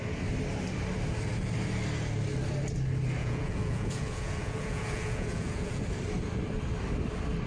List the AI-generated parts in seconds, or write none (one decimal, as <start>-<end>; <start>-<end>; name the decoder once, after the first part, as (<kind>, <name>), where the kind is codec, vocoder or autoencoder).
3.2-5.8 (vocoder, Vocos)